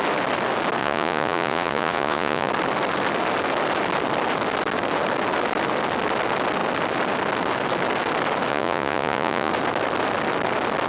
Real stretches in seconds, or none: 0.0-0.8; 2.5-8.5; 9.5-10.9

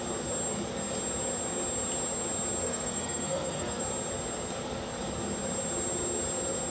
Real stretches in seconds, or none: 0.0-2.6; 3.8-6.7